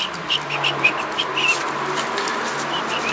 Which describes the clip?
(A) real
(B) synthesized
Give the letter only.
A